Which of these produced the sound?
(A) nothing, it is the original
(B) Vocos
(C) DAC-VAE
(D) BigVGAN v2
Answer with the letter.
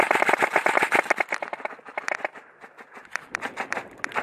A